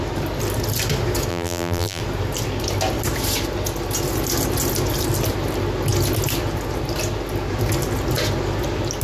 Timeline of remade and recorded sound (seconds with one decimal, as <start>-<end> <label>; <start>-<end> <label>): 0.0-1.3 recorded; 1.3-2.0 remade; 2.0-9.0 recorded